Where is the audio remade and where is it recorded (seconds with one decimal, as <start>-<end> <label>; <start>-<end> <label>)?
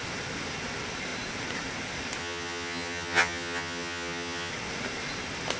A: 0.0-2.2 recorded; 2.2-4.5 remade; 4.5-5.6 recorded